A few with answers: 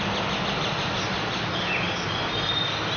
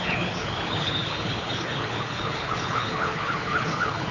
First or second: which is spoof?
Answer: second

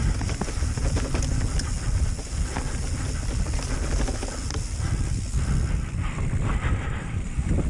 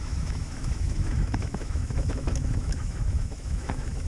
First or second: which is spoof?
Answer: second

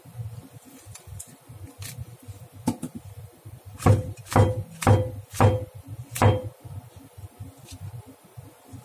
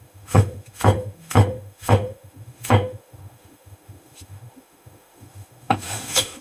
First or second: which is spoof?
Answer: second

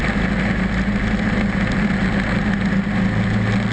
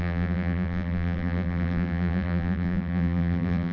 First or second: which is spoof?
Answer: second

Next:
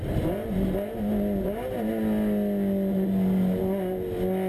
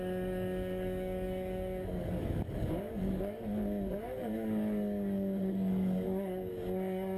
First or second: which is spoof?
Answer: second